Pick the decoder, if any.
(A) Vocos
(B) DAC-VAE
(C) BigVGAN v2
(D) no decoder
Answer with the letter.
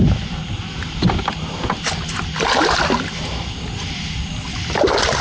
D